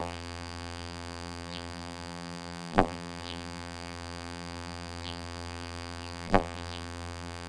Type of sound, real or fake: fake